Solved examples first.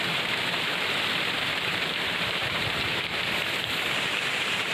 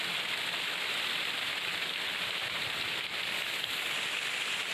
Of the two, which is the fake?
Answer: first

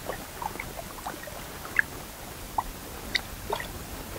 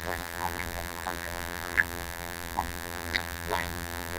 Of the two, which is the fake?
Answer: second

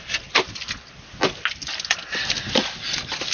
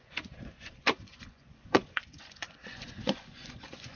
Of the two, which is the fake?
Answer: second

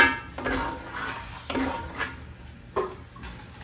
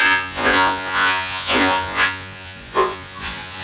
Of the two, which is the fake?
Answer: second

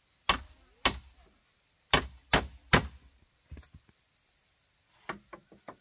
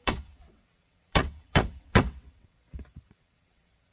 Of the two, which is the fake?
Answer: second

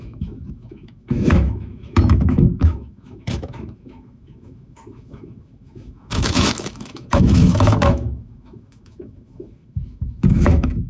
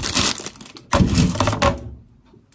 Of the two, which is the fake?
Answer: first